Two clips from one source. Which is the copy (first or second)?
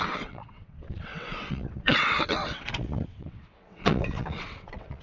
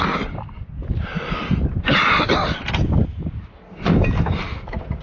first